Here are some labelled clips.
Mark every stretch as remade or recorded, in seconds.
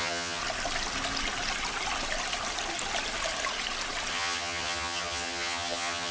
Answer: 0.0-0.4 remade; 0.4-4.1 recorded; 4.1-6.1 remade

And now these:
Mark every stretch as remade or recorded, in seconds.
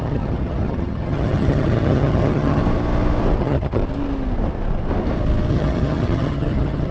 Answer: 0.0-2.6 remade; 2.6-3.4 recorded; 3.4-3.8 remade; 3.8-5.5 recorded; 5.5-6.9 remade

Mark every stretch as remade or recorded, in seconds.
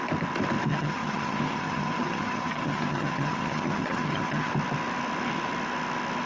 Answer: 0.0-0.7 recorded; 0.7-4.5 remade; 4.5-6.3 recorded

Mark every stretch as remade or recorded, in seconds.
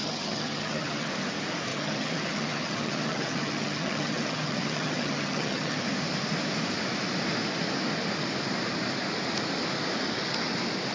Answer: 0.0-1.1 remade; 1.1-1.7 recorded; 1.7-5.8 remade; 5.8-10.9 recorded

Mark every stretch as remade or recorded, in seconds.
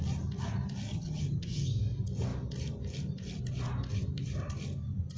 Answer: 0.0-0.9 recorded; 0.9-1.7 remade; 1.7-5.2 recorded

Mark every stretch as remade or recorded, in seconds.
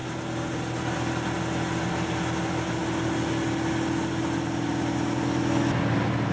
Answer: 0.0-6.3 recorded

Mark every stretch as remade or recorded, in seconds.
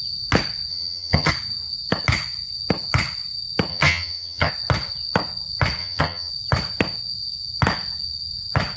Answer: 0.0-0.7 recorded; 0.7-1.3 remade; 1.3-3.7 recorded; 3.7-4.5 remade; 4.5-5.8 recorded; 5.8-6.3 remade; 6.3-8.8 recorded